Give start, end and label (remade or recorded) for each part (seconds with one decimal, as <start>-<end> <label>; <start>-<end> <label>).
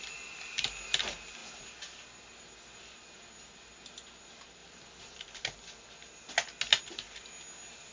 0.0-4.6 recorded; 4.6-5.2 remade; 5.2-7.9 recorded